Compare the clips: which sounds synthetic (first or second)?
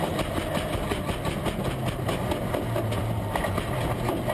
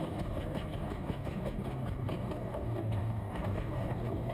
second